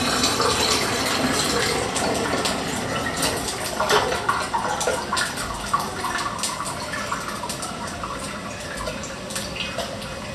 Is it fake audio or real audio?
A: real